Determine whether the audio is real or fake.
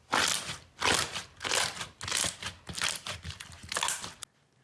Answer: real